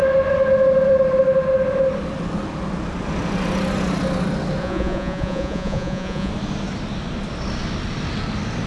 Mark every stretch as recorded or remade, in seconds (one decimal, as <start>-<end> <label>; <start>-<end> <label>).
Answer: 0.0-4.6 recorded; 4.6-6.3 remade; 6.3-8.7 recorded